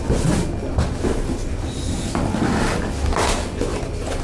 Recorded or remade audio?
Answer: recorded